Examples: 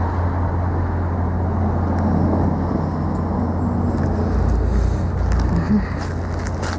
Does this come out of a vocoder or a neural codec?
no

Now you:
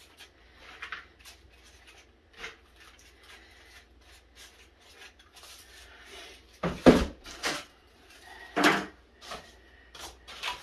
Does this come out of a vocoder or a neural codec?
no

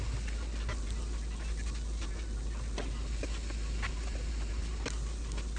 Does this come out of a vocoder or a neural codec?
no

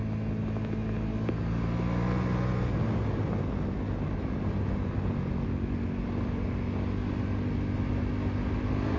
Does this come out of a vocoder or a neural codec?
no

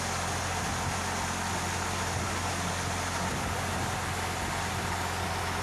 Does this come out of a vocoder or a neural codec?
no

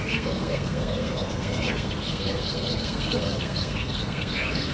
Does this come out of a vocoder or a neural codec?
yes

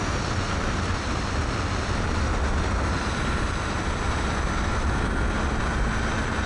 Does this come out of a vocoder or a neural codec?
no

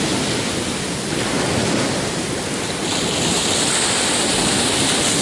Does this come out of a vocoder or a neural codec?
no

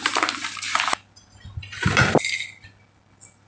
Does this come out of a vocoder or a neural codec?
no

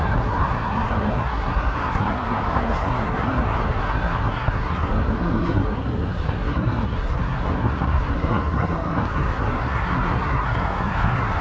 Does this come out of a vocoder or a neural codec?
yes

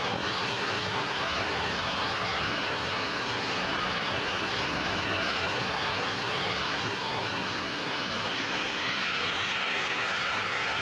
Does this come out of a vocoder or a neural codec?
yes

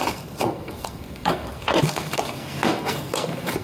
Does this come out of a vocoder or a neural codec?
yes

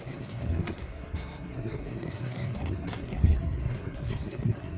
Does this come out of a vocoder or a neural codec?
yes